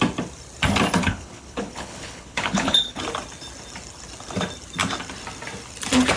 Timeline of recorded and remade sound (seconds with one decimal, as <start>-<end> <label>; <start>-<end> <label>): 0.0-1.0 recorded; 1.0-3.0 remade; 3.0-6.2 recorded